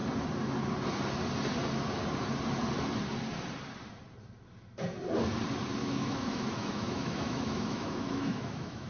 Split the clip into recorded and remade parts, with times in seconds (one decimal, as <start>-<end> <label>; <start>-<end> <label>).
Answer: 0.0-5.8 recorded; 5.8-8.9 remade